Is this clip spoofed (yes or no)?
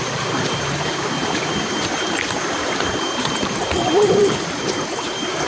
yes